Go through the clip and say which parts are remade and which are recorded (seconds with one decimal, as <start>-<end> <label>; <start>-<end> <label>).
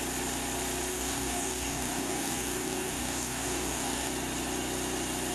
0.0-0.9 recorded; 0.9-4.1 remade; 4.1-5.3 recorded